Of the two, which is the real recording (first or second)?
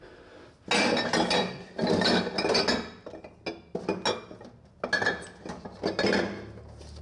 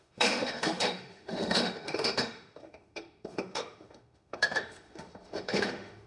first